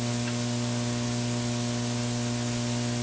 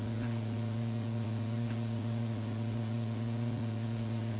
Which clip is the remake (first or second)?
second